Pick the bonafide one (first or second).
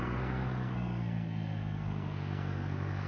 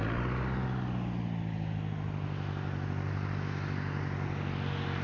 second